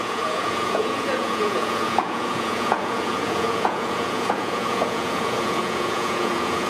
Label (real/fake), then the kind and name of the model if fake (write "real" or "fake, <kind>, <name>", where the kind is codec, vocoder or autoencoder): fake, vocoder, Vocos